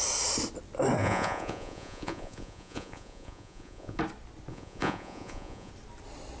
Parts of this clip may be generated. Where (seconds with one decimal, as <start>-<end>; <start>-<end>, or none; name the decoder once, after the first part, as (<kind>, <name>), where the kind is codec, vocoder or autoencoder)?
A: 1.0-4.0 (vocoder, Vocos); 4.5-5.7